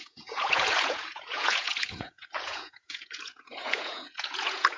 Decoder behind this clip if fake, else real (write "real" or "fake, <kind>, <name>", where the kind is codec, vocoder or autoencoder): fake, vocoder, Vocos